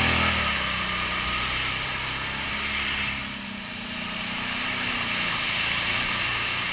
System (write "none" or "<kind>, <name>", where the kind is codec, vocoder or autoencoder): none